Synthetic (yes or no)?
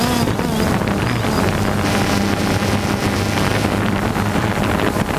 no